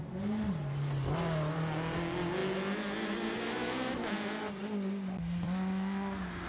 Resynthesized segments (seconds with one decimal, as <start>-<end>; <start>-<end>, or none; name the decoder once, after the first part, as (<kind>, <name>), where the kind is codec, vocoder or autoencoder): none

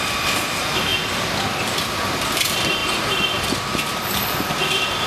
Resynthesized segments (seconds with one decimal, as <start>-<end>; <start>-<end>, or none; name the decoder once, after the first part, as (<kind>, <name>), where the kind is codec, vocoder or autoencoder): 0.0-0.9 (vocoder, BigVGAN v2); 1.7-5.1

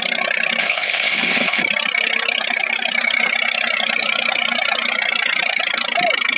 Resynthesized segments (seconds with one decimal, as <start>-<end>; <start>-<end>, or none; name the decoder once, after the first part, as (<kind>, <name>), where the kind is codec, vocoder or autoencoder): 0.6-1.6 (codec, ZipCodec)